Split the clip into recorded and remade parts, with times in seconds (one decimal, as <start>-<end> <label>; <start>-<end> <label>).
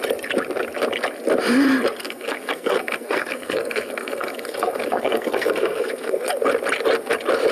0.0-2.0 recorded; 2.0-6.3 remade; 6.3-7.5 recorded